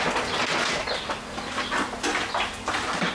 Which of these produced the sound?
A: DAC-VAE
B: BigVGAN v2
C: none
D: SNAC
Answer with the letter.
C